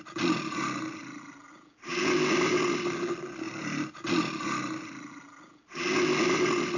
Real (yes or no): yes